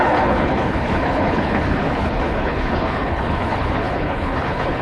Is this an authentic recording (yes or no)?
no